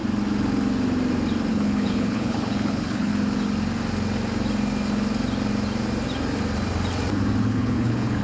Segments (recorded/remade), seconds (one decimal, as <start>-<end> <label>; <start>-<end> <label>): 0.0-1.5 recorded; 1.5-3.1 remade; 3.1-7.4 recorded; 7.4-8.2 remade